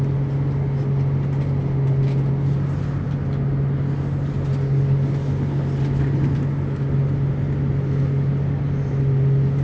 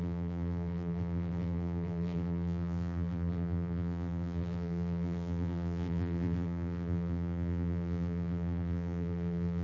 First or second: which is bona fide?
first